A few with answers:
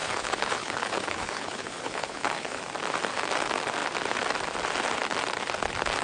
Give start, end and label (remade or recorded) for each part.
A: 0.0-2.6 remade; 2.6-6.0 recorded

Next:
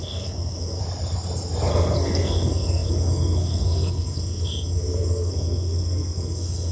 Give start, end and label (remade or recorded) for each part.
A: 0.0-0.8 remade; 0.8-1.7 recorded; 1.7-6.7 remade

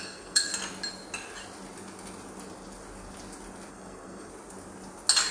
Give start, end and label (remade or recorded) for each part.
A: 0.0-0.5 remade; 0.5-3.7 recorded; 3.7-4.3 remade; 4.3-5.3 recorded

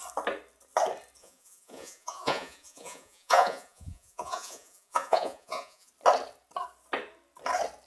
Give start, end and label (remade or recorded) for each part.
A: 0.0-1.2 recorded; 1.2-5.9 remade; 5.9-7.9 recorded

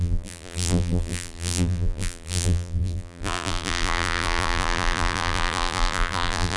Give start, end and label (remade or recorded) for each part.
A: 0.0-6.6 remade

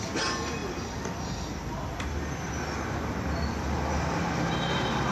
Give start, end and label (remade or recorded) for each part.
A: 0.0-5.1 recorded